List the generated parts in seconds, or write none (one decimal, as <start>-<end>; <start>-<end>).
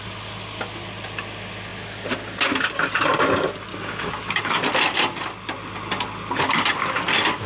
3.7-4.6